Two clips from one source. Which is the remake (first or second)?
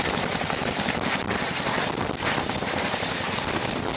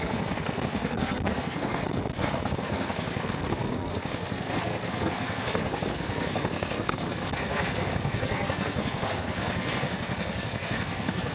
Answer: second